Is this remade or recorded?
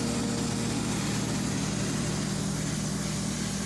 recorded